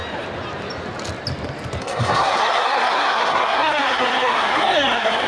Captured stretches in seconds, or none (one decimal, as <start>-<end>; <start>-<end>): 0.0-1.8